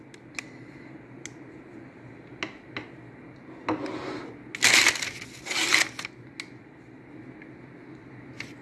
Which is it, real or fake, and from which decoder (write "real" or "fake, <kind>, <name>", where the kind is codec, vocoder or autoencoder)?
real